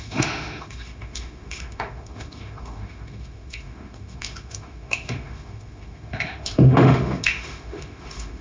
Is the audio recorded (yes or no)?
no